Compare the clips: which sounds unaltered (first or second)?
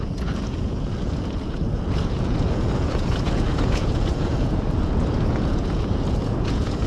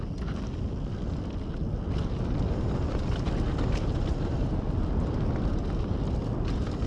second